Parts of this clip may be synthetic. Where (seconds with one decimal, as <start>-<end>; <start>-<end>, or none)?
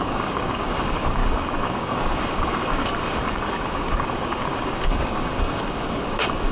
0.0-6.5